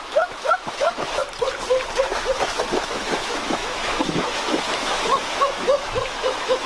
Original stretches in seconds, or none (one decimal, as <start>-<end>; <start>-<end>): 1.2-2.0